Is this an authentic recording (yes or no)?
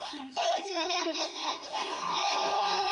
no